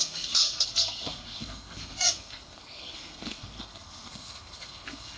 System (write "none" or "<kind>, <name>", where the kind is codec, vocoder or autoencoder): codec, SNAC